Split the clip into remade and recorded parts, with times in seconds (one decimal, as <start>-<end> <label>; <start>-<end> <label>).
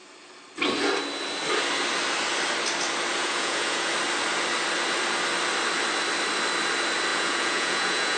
0.0-3.2 recorded; 3.2-3.9 remade; 3.9-7.1 recorded; 7.1-8.2 remade